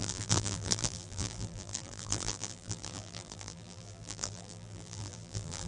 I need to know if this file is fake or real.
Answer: fake